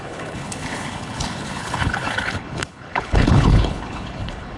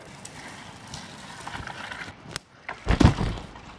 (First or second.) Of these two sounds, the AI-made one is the first